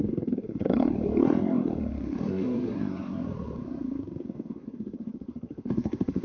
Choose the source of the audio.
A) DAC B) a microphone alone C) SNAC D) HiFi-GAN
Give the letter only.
C